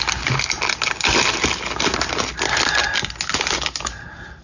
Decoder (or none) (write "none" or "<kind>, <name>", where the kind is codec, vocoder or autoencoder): none